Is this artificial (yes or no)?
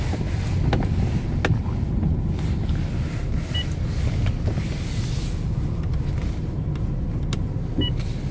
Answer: no